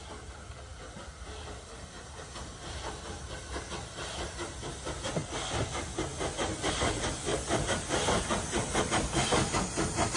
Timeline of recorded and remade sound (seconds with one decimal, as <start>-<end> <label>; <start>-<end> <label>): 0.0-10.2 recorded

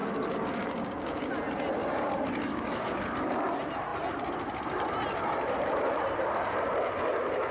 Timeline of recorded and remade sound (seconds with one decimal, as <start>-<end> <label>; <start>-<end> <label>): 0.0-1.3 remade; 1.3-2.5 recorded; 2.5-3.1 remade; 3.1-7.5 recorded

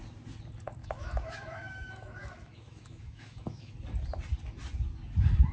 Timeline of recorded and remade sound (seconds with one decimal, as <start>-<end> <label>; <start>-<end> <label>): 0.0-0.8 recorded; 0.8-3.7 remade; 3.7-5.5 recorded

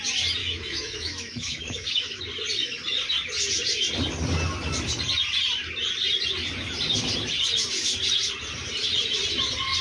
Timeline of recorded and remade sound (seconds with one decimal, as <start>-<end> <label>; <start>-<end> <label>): 0.0-0.4 recorded; 0.4-2.2 remade; 2.2-9.8 recorded

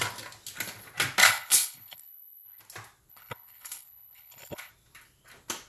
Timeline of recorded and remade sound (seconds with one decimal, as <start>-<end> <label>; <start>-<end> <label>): 0.0-1.2 recorded; 1.2-2.6 remade; 2.6-3.1 recorded; 3.1-4.7 remade; 4.7-5.7 recorded

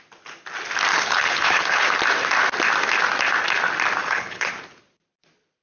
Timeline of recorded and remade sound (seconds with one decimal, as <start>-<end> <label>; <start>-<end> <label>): 0.0-0.9 recorded; 0.9-1.9 remade; 1.9-4.0 recorded; 4.0-4.5 remade; 4.5-5.6 recorded